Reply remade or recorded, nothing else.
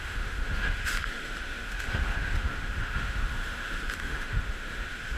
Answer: remade